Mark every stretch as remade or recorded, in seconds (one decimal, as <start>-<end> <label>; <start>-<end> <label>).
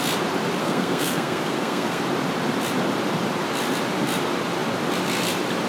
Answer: 0.0-0.6 recorded; 0.6-2.0 remade; 2.0-5.7 recorded